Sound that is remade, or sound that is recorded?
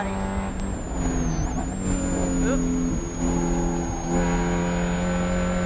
recorded